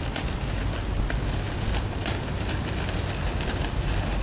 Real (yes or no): yes